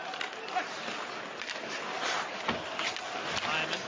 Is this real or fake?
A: real